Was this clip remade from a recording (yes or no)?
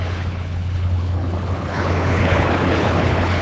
yes